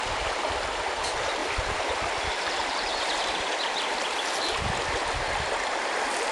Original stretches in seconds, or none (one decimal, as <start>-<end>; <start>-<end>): none